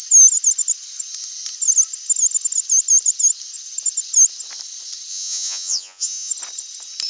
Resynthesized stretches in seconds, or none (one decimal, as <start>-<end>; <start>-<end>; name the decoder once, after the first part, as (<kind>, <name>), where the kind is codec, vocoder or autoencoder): 5.1-6.3 (vocoder, Vocos)